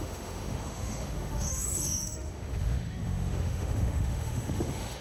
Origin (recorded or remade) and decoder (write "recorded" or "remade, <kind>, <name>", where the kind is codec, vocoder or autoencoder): remade, autoencoder, DAC-VAE